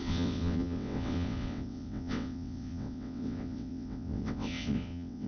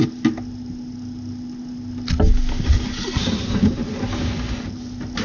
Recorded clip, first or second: second